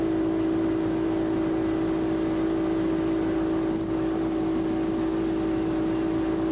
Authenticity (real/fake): real